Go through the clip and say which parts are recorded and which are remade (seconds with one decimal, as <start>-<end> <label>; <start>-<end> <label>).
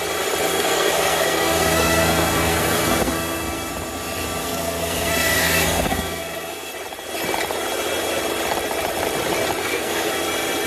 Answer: 0.0-0.5 recorded; 0.5-3.7 remade; 3.7-4.4 recorded; 4.4-6.7 remade; 6.7-9.6 recorded; 9.6-10.1 remade; 10.1-10.7 recorded